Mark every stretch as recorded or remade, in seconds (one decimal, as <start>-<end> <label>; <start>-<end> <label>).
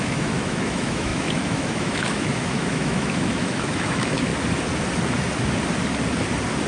0.0-4.3 remade; 4.3-6.7 recorded